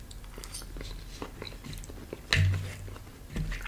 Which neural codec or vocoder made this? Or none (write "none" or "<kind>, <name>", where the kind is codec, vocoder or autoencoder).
none